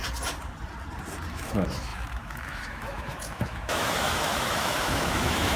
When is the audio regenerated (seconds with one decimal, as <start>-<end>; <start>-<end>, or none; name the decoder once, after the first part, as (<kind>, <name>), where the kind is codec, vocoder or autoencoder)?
1.3-5.6 (autoencoder, DAC-VAE)